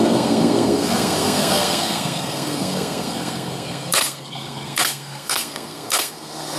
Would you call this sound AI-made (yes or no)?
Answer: yes